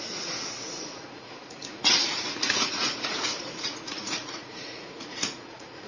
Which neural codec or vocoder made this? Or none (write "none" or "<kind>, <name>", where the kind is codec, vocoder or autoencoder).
vocoder, Vocos